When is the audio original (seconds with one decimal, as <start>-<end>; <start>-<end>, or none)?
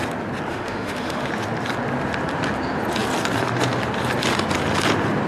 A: 0.0-0.5; 1.3-5.3